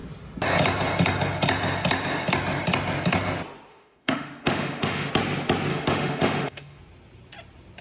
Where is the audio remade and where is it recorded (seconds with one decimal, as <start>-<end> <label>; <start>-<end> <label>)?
0.0-3.7 recorded; 3.7-5.1 remade; 5.1-5.7 recorded; 5.7-6.8 remade; 6.8-7.8 recorded